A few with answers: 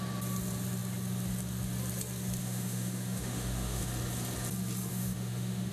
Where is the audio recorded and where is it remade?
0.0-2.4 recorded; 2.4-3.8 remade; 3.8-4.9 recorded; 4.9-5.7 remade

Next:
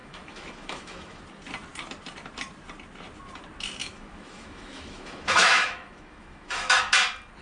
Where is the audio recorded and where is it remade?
0.0-1.2 remade; 1.2-3.8 recorded; 3.8-6.8 remade; 6.8-7.4 recorded

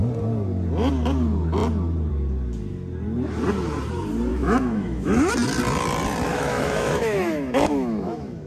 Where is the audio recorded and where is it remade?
0.0-4.3 recorded; 4.3-5.3 remade; 5.3-6.3 recorded; 6.3-8.5 remade

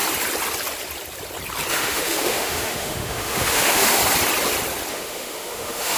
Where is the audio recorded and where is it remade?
0.0-1.7 recorded; 1.7-4.0 remade; 4.0-4.9 recorded; 4.9-6.0 remade

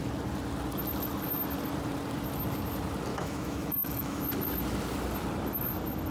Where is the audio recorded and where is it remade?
0.0-3.1 recorded; 3.1-4.2 remade; 4.2-6.1 recorded

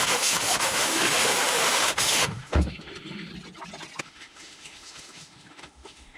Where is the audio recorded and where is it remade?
0.0-3.3 remade; 3.3-4.0 recorded; 4.0-6.2 remade